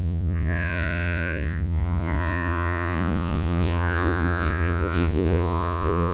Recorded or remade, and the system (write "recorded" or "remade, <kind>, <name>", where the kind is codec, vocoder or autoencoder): remade, vocoder, Vocos